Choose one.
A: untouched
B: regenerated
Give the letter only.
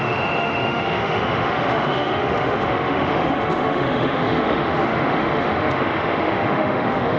B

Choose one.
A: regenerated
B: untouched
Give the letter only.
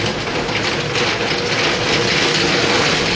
B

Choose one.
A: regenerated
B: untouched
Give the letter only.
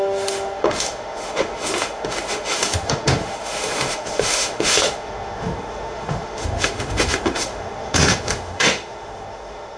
A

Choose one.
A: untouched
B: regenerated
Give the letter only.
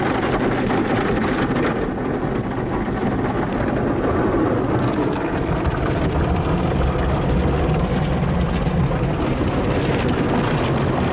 A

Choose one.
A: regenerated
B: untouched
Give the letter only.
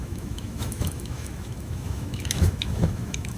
A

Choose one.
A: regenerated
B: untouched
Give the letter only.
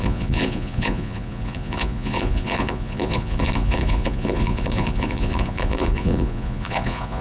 A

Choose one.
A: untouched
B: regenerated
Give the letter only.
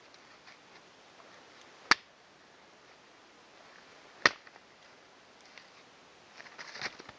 A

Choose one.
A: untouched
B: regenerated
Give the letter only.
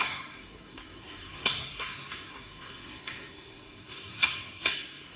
B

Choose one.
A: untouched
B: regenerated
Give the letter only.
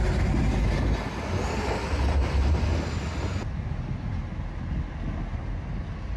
A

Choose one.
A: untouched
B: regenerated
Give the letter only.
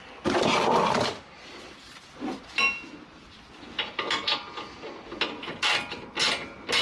A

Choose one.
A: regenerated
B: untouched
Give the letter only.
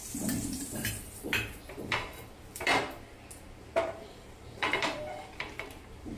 A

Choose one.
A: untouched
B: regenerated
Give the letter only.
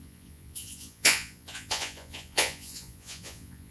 B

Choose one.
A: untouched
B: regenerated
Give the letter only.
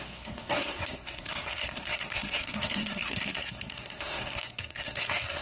B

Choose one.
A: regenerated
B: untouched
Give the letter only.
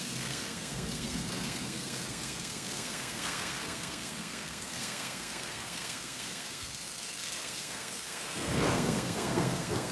A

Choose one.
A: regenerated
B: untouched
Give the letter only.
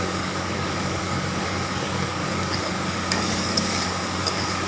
A